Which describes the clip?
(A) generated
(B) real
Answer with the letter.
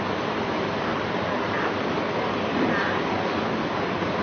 B